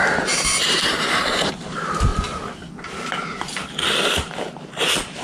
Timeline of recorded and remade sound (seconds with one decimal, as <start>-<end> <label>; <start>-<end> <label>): 0.0-2.1 remade; 2.1-4.1 recorded; 4.1-5.2 remade